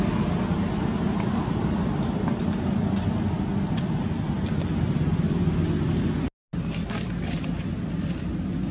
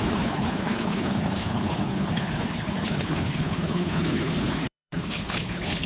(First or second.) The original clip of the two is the first